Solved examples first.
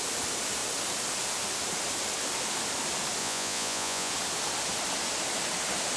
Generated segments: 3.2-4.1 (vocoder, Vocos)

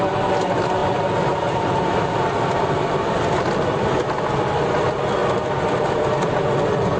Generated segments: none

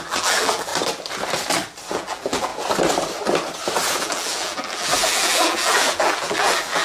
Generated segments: 0.0-0.7 (vocoder, BigVGAN v2); 1.9-2.5; 4.0-6.8

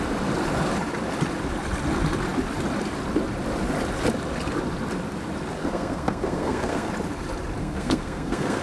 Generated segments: 5.6-6.9 (codec, SNAC); 7.6-8.6

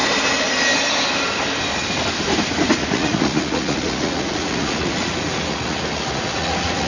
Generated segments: 2.8-6.9 (vocoder, Vocos)